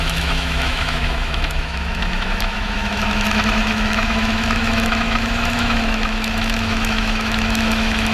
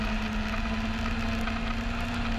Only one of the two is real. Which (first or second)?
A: second